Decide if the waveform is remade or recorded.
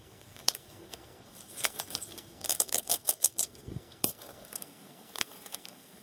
remade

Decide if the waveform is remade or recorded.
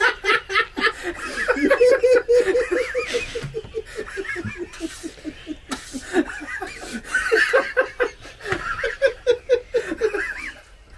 recorded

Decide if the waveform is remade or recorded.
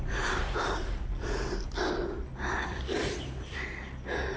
recorded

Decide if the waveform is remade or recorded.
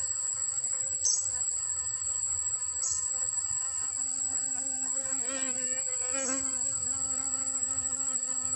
recorded